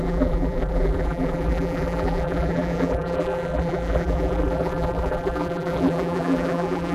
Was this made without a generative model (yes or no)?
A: no